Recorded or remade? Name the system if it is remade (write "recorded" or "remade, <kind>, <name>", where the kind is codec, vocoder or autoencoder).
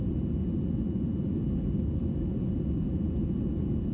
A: recorded